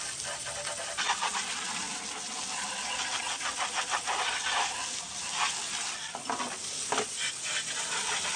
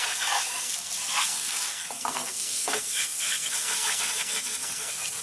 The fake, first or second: second